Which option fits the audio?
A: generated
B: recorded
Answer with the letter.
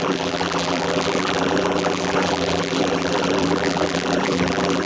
A